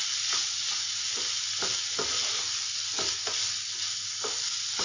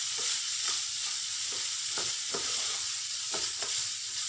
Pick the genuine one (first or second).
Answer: first